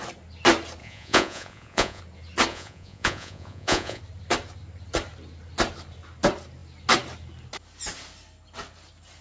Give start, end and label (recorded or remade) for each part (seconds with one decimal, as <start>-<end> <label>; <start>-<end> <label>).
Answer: 0.0-0.8 recorded; 0.8-2.0 remade; 2.0-2.5 recorded; 2.5-4.0 remade; 4.0-9.2 recorded